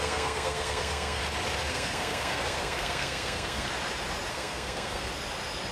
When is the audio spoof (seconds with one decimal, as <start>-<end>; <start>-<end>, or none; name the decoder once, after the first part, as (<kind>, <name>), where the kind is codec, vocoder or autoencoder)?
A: 0.0-1.2 (codec, SNAC); 1.7-3.7; 4.3-5.1